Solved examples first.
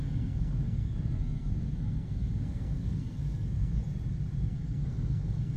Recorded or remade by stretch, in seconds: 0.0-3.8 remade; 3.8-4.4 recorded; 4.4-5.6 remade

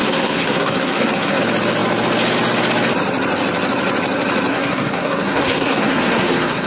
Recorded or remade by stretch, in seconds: 0.0-1.4 remade; 1.4-4.5 recorded; 4.5-6.7 remade

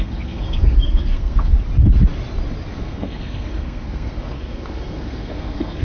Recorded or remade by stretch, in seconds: 0.0-1.5 remade; 1.5-2.7 recorded; 2.7-5.8 remade

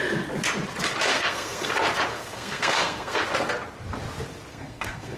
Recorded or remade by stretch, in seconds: 0.0-1.1 recorded; 1.1-1.7 remade; 1.7-2.1 recorded; 2.1-3.2 remade; 3.2-4.5 recorded; 4.5-5.2 remade

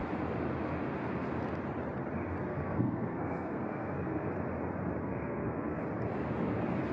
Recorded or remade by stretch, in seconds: 0.0-2.5 recorded; 2.5-4.3 remade; 4.3-5.0 recorded; 5.0-5.8 remade; 5.8-6.9 recorded